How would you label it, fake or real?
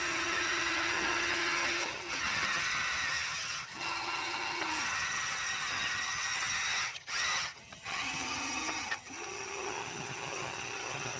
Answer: fake